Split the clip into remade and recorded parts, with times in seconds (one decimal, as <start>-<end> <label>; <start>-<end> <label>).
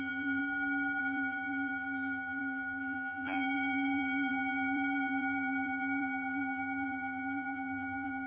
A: 0.0-0.4 remade; 0.4-1.0 recorded; 1.0-8.3 remade